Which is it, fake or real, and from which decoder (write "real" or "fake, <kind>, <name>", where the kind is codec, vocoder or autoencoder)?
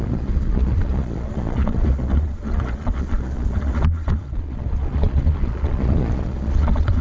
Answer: fake, vocoder, Vocos